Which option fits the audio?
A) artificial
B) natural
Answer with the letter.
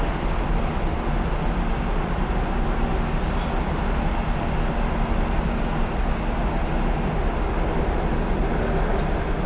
B